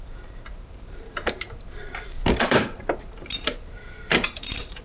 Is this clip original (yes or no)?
no